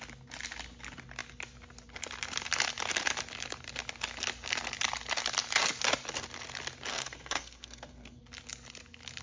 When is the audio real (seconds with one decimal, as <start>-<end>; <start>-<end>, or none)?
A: 0.0-6.9; 8.2-9.2